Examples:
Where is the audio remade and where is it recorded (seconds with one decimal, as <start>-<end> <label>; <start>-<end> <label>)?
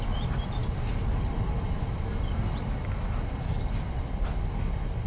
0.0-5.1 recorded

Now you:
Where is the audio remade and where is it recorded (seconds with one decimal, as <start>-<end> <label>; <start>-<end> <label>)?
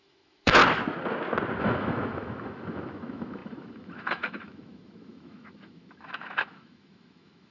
0.0-0.6 remade; 0.6-1.6 recorded; 1.6-7.5 remade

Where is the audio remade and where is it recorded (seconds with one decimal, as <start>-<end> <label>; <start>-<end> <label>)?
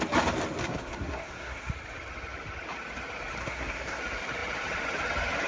0.0-0.6 recorded; 0.6-1.7 remade; 1.7-3.4 recorded; 3.4-4.0 remade; 4.0-5.5 recorded